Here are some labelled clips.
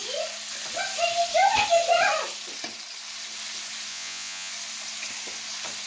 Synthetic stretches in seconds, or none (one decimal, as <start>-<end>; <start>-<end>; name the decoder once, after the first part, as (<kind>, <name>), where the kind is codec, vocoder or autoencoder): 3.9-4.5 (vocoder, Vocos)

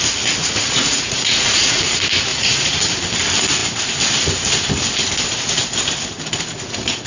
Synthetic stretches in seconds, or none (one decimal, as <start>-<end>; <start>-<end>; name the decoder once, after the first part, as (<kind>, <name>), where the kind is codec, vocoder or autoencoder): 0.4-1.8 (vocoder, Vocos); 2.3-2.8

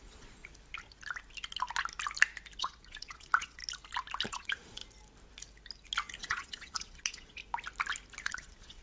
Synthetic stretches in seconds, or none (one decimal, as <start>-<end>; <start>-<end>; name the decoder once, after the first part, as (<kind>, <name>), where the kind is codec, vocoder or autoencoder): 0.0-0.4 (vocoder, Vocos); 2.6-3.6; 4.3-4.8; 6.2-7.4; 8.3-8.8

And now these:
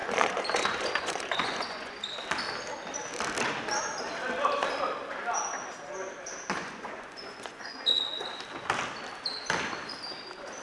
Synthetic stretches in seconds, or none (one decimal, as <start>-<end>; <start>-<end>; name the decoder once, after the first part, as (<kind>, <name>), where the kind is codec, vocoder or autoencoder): 0.0-2.0 (vocoder, Vocos); 6.6-7.8

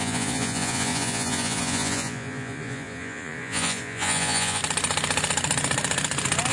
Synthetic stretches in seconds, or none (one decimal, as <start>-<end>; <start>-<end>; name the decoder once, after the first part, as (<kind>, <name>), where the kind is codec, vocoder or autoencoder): 0.0-4.6 (vocoder, Vocos)

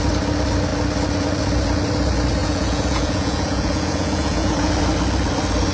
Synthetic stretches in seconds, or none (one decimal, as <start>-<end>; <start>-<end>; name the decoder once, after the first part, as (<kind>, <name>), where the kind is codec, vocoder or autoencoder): 2.4-4.7 (vocoder, Vocos)